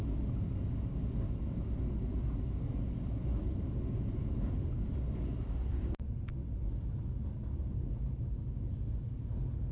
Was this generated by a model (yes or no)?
no